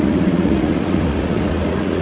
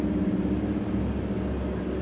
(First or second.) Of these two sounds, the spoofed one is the first